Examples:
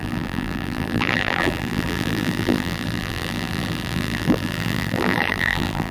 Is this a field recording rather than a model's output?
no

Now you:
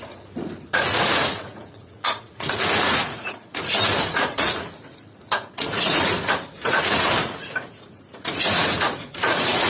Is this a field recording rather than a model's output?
no